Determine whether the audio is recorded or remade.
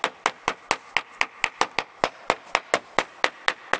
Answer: recorded